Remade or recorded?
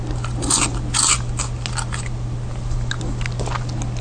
recorded